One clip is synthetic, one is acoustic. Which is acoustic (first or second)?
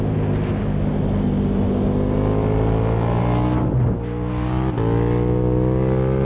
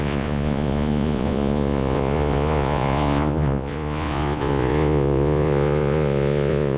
first